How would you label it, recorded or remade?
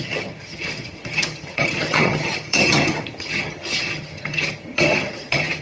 remade